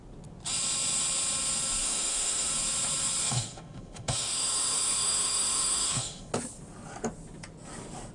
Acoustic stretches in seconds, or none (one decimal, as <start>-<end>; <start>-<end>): 0.0-1.8; 2.5-3.2; 6.3-8.1